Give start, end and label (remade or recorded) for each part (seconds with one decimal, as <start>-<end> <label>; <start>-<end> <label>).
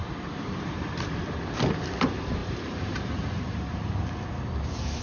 0.0-1.2 remade; 1.2-2.4 recorded; 2.4-4.1 remade; 4.1-5.0 recorded